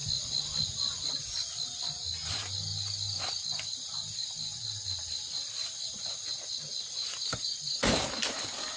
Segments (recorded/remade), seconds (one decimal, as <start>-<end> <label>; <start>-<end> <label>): 0.0-8.8 recorded